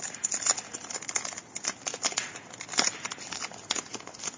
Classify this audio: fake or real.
real